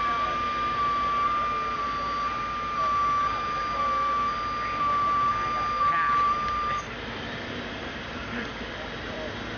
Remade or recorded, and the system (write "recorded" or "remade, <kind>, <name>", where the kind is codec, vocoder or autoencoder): recorded